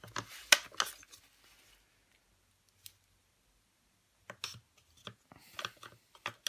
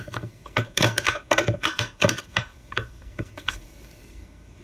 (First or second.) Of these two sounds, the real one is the first